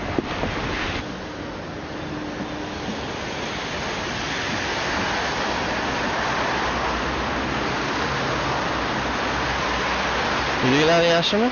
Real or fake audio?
real